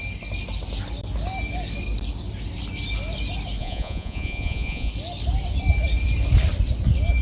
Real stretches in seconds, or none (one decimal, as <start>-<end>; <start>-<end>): 0.0-3.6; 4.9-7.2